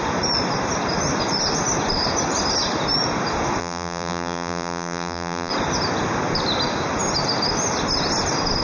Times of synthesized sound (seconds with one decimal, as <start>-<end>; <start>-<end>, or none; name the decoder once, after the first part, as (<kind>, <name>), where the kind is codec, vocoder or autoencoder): 3.6-5.5 (vocoder, BigVGAN v2)